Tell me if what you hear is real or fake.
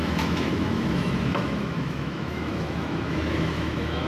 fake